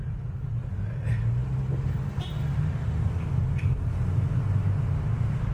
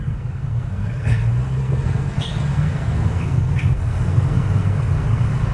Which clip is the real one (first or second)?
first